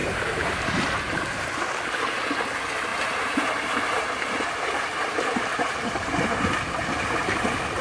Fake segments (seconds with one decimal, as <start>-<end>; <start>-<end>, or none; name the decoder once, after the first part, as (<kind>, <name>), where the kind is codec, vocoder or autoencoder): 0.0-1.0 (vocoder, BigVGAN v2); 2.9-6.5